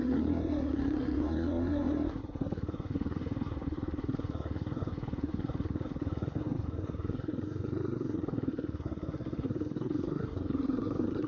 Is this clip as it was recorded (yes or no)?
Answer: no